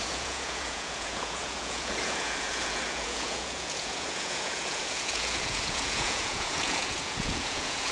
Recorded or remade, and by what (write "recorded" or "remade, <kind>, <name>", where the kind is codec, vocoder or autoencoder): remade, vocoder, Vocos